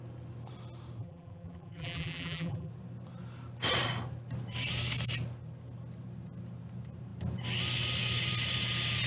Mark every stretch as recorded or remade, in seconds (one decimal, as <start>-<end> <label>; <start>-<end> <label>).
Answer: 0.0-1.0 recorded; 1.0-2.7 remade; 2.7-9.1 recorded